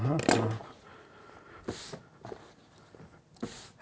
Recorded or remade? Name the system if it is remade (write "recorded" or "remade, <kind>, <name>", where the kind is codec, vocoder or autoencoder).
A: recorded